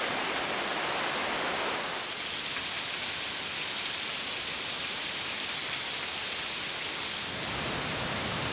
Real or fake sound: real